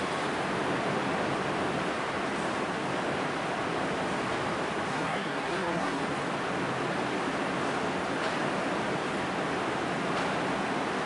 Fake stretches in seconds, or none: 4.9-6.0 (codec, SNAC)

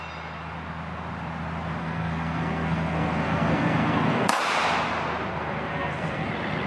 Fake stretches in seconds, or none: 1.8-4.4 (codec, SNAC); 5.3-6.3

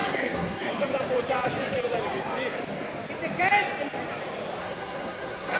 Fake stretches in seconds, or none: 0.0-0.7 (codec, SNAC); 4.6-5.6

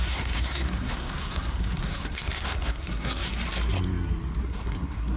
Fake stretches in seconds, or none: 0.0-3.3 (codec, SNAC); 4.4-5.2

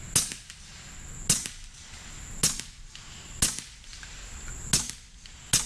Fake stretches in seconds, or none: none